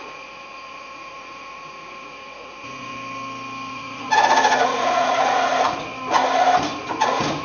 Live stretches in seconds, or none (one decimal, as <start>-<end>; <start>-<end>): 2.9-3.7; 5.9-7.0

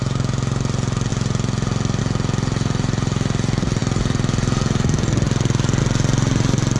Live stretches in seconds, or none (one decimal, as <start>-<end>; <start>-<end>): 0.0-6.8